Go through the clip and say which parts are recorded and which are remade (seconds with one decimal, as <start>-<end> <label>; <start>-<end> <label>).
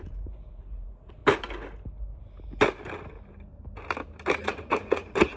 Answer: 0.0-1.2 remade; 1.2-4.4 recorded; 4.4-5.4 remade